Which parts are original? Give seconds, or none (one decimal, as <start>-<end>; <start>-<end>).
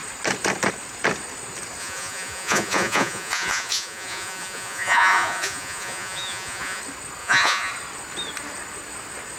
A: 0.0-1.8; 6.8-7.2; 7.7-9.4